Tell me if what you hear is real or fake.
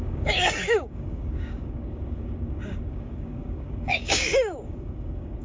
fake